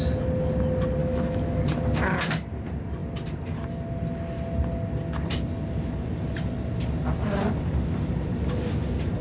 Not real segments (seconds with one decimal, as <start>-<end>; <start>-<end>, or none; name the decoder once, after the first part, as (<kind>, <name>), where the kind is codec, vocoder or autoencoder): 1.0-1.6 (autoencoder, DAC-VAE)